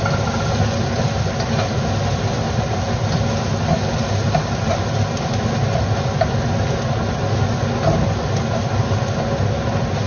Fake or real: real